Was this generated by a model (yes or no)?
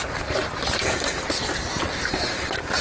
yes